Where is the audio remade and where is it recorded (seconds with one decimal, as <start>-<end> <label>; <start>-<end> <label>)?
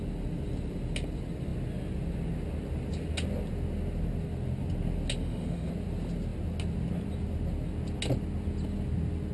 0.0-5.2 recorded; 5.2-5.7 remade; 5.7-9.3 recorded